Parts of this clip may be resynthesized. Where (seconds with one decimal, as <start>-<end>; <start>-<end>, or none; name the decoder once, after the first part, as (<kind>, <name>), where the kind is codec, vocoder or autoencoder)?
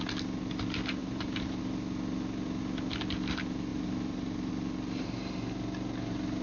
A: 1.0-1.6 (vocoder, BigVGAN v2); 3.7-4.5